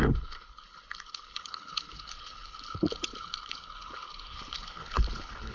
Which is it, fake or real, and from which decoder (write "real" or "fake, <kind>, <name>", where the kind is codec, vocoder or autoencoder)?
fake, codec, HILCodec